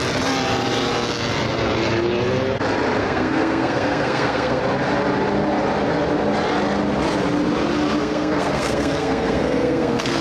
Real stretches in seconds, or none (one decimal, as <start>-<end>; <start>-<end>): 0.0-3.0; 4.6-8.0